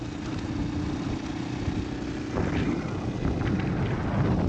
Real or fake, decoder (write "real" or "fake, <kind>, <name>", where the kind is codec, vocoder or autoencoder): real